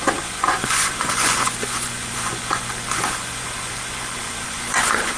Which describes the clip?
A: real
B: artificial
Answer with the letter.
B